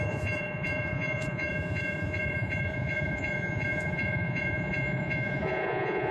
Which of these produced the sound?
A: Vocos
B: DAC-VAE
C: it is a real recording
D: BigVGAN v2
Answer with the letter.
A